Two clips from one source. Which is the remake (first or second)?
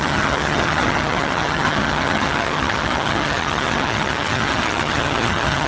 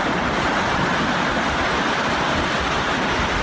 first